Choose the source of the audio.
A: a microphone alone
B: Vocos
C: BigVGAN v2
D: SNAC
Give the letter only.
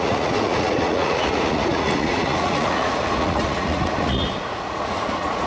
B